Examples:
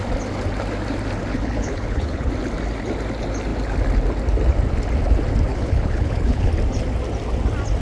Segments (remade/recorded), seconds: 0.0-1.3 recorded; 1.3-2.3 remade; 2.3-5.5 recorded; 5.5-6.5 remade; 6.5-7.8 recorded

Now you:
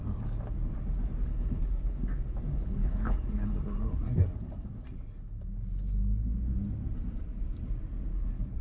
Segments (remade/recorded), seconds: 0.0-1.3 recorded; 1.3-1.9 remade; 1.9-2.8 recorded; 2.8-3.5 remade; 3.5-8.1 recorded; 8.1-8.6 remade

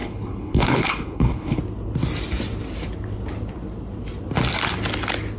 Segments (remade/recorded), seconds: 0.0-1.6 remade; 1.6-5.4 recorded

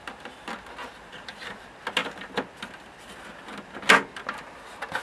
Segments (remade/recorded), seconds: 0.0-5.0 recorded

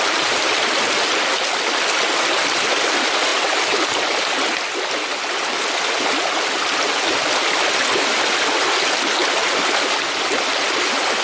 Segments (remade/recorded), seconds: 0.0-11.2 recorded